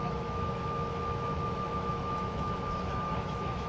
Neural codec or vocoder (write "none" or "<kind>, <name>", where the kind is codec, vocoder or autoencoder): autoencoder, DAC-VAE